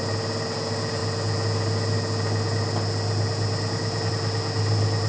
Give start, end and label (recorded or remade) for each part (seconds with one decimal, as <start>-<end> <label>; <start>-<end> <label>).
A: 0.0-5.1 recorded